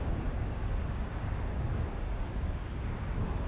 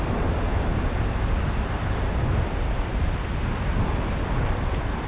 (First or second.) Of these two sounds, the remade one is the first